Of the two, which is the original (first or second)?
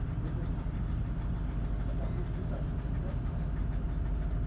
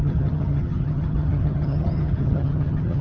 first